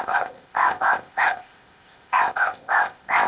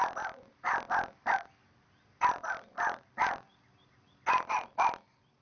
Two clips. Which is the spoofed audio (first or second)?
first